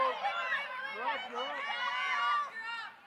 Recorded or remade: recorded